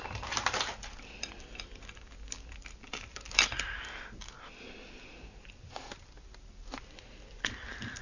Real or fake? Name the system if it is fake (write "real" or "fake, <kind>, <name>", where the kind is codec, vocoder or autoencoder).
real